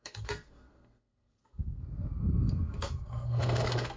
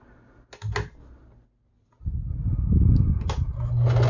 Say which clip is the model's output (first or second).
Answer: first